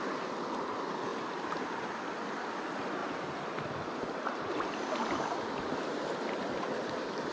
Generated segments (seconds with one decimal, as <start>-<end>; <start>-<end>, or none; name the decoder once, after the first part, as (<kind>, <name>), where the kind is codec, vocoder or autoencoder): none